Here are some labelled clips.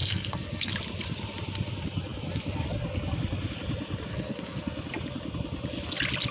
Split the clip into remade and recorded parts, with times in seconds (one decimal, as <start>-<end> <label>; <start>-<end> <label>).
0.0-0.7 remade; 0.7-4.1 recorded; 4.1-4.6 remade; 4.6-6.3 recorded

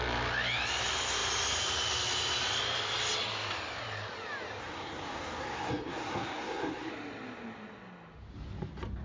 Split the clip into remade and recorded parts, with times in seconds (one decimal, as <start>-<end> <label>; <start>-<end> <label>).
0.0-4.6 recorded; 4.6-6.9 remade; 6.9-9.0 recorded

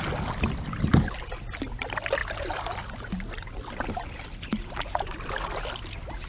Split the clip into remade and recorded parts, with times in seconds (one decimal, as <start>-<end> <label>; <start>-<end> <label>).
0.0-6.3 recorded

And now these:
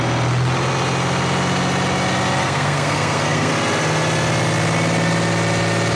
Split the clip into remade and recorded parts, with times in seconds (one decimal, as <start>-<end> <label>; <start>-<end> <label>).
0.0-2.4 recorded; 2.4-3.5 remade; 3.5-6.0 recorded